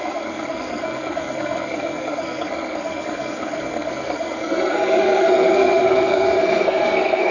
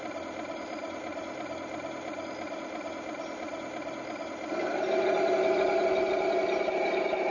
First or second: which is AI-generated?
first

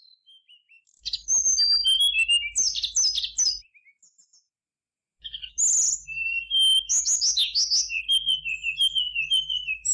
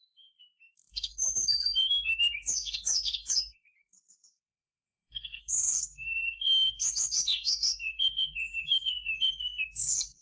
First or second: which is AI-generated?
second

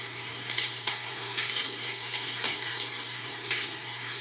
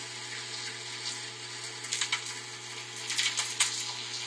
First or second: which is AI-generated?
first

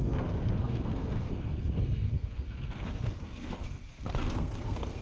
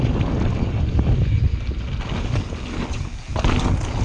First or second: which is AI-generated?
first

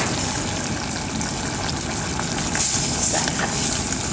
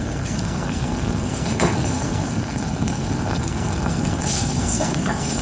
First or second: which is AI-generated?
second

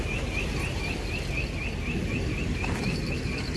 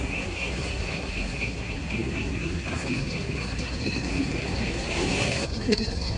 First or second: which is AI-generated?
second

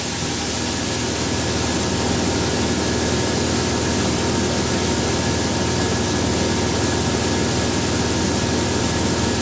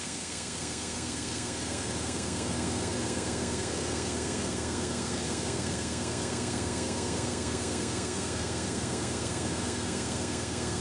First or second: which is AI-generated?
second